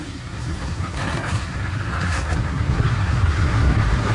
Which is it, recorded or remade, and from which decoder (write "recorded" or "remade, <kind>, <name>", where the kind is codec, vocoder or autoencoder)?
remade, codec, SNAC